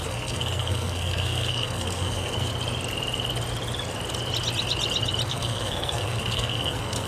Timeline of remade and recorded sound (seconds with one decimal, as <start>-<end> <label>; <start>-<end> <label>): 0.0-2.5 remade; 2.5-5.3 recorded; 5.3-7.1 remade